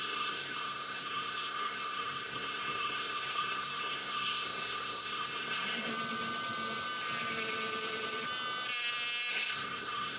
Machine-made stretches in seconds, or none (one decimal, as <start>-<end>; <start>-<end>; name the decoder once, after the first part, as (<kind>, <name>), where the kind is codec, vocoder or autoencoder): 0.0-5.9 (codec, SNAC); 9.3-10.2